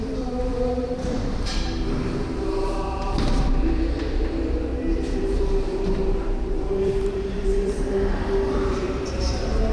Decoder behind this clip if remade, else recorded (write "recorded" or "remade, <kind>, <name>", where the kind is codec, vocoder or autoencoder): remade, vocoder, BigVGAN v2